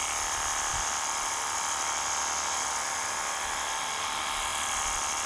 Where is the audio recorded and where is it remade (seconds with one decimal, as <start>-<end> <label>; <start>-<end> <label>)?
0.0-0.7 recorded; 0.7-3.9 remade; 3.9-4.5 recorded; 4.5-5.3 remade